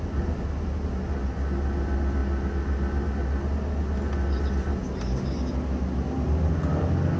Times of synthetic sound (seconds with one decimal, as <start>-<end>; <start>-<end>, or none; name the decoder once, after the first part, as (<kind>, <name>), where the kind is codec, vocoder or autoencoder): none